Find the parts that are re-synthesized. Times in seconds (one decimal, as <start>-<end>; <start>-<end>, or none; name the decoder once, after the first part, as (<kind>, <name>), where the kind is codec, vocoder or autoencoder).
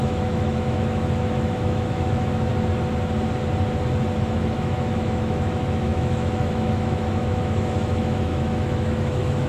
0.0-2.5 (autoencoder, DAC-VAE); 4.2-9.5